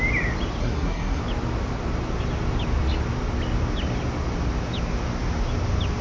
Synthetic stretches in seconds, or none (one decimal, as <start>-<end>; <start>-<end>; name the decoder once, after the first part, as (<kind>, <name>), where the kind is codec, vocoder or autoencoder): 0.6-1.2 (codec, SNAC)